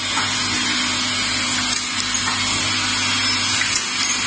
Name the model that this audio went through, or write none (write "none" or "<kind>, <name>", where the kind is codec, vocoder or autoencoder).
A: none